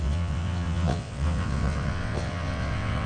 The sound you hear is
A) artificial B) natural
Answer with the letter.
A